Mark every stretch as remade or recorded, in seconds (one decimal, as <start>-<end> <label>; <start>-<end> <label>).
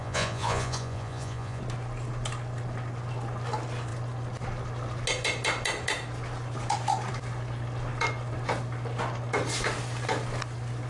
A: 0.0-1.6 remade; 1.6-10.9 recorded